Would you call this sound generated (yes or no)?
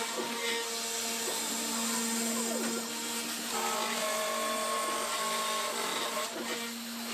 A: no